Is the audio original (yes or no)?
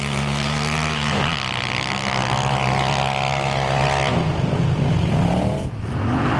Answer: yes